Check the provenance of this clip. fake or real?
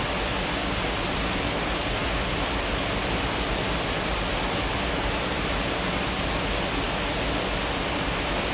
real